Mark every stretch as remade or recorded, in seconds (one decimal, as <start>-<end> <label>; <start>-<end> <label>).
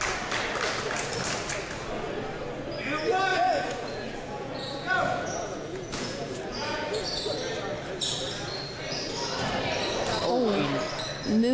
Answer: 0.0-3.3 recorded; 3.3-7.0 remade; 7.0-11.5 recorded